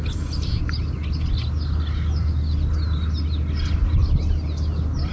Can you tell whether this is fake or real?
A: real